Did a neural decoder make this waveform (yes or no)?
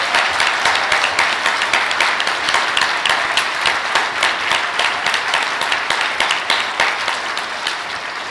no